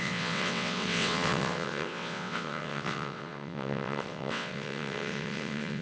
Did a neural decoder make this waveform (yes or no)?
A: yes